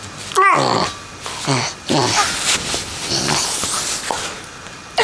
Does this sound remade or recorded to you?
recorded